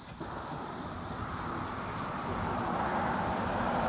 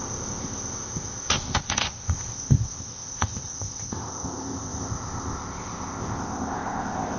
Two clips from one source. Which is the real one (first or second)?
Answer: first